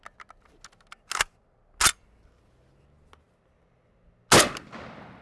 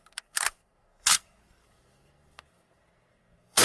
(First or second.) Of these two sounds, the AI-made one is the second